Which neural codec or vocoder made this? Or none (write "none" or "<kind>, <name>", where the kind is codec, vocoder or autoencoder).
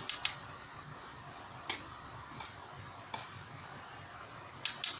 none